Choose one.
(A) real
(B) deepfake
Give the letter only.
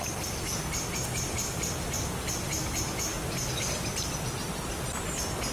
A